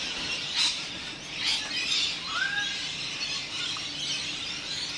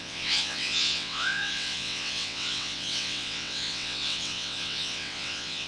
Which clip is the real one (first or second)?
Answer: first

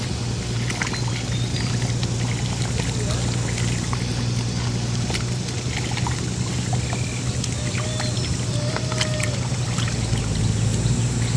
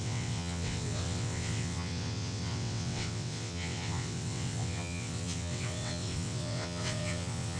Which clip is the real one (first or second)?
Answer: first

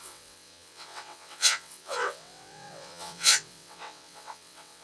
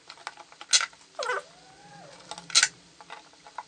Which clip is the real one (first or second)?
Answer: second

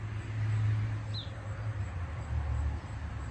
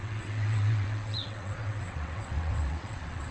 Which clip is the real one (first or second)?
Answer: first